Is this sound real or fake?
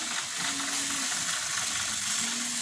real